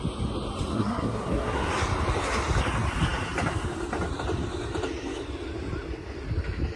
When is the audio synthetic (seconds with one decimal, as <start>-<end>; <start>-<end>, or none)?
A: 0.7-1.7